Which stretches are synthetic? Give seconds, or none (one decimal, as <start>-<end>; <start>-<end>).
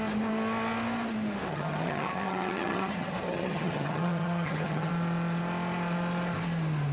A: 1.5-4.9